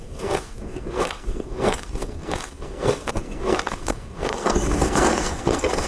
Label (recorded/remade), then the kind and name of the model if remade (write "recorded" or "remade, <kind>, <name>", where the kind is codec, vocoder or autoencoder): remade, codec, SNAC